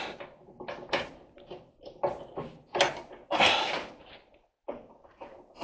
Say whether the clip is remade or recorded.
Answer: recorded